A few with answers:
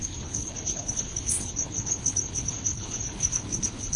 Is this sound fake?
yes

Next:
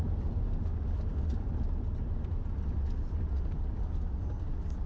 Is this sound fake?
no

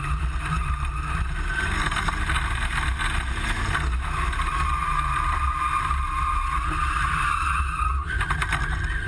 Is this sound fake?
no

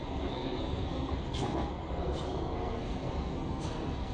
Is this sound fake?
yes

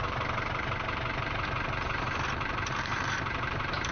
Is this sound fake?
yes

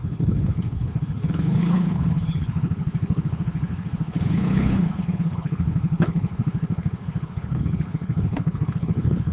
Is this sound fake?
yes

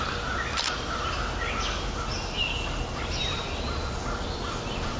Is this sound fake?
no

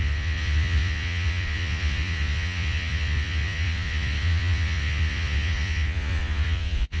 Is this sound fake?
yes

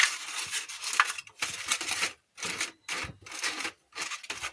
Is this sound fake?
yes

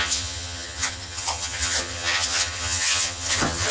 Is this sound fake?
yes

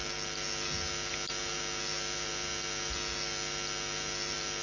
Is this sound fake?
no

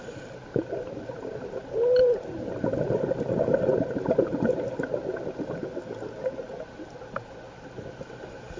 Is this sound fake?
no